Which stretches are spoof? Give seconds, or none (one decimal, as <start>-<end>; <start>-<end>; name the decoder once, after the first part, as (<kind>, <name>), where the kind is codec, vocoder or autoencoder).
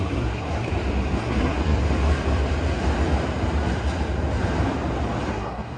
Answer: 0.0-0.7 (codec, SNAC); 1.2-1.8; 5.3-5.8